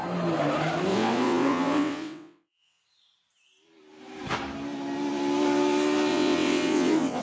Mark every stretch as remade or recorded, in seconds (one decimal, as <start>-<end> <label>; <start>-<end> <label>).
0.0-0.9 recorded; 0.9-2.8 remade; 2.8-6.1 recorded; 6.1-7.2 remade